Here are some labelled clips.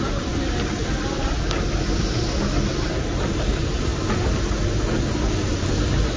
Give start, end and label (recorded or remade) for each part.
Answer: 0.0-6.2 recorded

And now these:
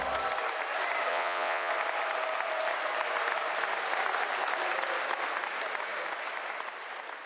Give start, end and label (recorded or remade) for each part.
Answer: 0.0-1.1 recorded; 1.1-1.7 remade; 1.7-7.3 recorded

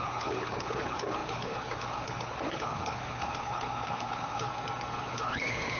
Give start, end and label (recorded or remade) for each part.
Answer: 0.0-4.5 remade; 4.5-5.1 recorded; 5.1-5.8 remade

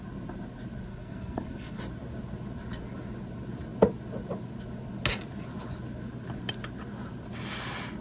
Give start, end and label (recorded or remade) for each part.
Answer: 0.0-0.9 recorded; 0.9-1.8 remade; 1.8-8.0 recorded

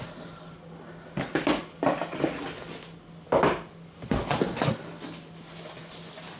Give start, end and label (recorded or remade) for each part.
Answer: 0.0-6.4 recorded

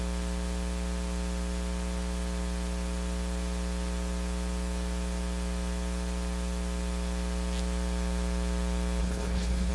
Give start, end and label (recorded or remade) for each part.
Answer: 0.0-9.0 recorded; 9.0-9.7 remade

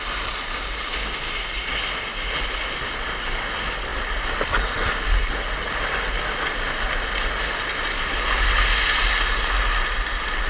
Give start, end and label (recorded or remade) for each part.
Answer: 0.0-10.5 recorded

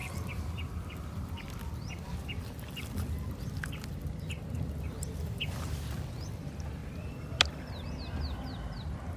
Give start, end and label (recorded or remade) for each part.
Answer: 0.0-9.2 recorded